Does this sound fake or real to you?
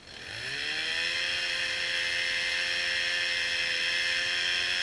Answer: real